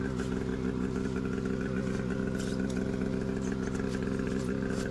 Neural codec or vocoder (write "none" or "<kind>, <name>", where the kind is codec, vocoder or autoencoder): none